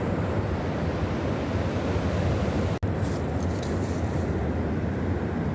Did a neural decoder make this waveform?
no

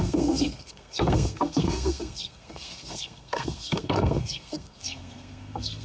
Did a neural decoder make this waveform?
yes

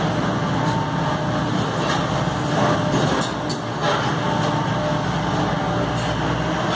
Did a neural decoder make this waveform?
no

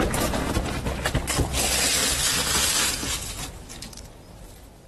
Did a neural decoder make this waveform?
no